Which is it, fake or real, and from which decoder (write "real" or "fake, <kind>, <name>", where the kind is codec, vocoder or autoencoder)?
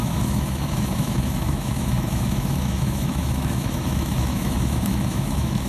fake, autoencoder, DAC-VAE